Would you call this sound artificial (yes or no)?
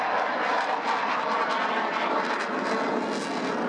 no